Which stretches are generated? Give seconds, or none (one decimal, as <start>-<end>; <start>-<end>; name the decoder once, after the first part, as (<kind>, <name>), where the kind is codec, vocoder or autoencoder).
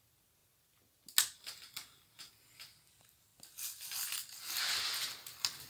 none